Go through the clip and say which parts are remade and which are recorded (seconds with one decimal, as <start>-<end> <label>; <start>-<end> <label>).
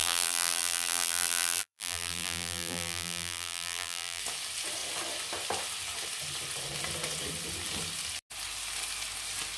0.0-4.2 remade; 4.2-9.6 recorded